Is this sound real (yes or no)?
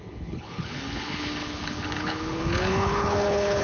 no